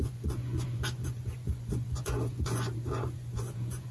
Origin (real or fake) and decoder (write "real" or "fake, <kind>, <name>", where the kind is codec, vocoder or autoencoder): fake, vocoder, Vocos